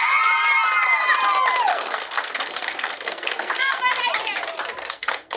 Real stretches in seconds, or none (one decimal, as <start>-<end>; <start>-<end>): 0.0-1.7; 3.8-4.8